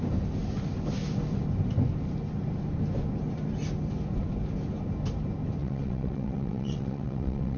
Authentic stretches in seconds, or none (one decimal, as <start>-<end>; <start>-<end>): 0.0-5.6